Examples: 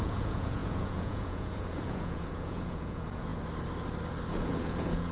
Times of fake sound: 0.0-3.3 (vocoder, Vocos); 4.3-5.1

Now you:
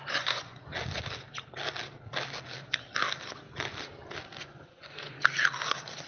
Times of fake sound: 0.0-0.7 (vocoder, Vocos); 4.4-5.2

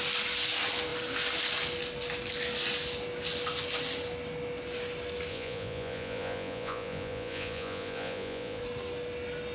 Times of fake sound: 5.3-8.6 (vocoder, Vocos)